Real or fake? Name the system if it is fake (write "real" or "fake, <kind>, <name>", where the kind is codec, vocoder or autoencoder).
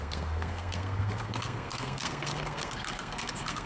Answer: fake, codec, SNAC